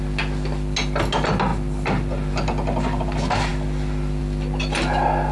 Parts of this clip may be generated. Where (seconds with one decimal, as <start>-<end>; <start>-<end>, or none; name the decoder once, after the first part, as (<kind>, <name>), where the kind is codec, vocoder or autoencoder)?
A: none